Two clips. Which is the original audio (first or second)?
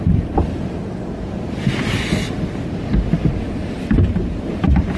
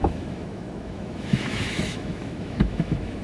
first